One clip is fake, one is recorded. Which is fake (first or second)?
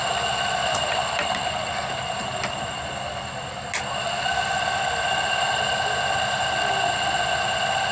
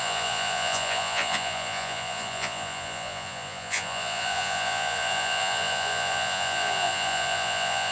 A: second